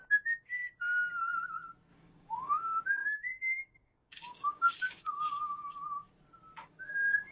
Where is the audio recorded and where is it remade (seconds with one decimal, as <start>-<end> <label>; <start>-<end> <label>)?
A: 0.0-1.9 recorded; 1.9-2.5 remade; 2.5-3.0 recorded; 3.0-5.7 remade; 5.7-6.6 recorded; 6.6-7.3 remade